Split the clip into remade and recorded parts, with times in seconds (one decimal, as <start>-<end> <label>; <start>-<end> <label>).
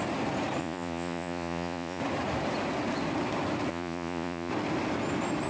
0.0-0.6 recorded; 0.6-2.0 remade; 2.0-3.7 recorded; 3.7-4.5 remade; 4.5-5.5 recorded